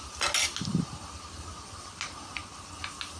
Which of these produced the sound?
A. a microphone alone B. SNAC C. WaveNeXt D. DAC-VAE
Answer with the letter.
A